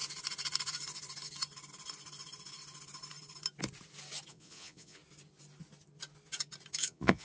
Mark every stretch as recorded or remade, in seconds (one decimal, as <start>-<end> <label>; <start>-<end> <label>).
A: 0.0-4.3 recorded; 4.3-5.0 remade; 5.0-6.8 recorded; 6.8-7.2 remade